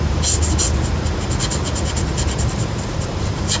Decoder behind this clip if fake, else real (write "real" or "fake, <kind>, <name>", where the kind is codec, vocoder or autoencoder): real